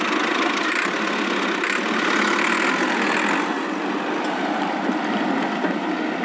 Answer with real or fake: real